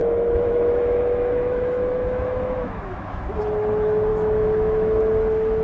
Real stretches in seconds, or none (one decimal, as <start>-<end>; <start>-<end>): 3.4-4.1; 5.0-5.6